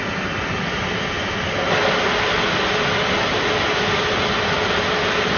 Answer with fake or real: real